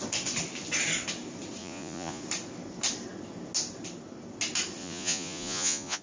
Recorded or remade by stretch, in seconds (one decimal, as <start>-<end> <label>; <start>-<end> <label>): 0.0-1.6 recorded; 1.6-2.2 remade; 2.2-4.8 recorded; 4.8-6.0 remade